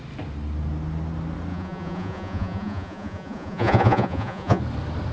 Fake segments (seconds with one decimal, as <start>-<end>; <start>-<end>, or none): 1.5-4.6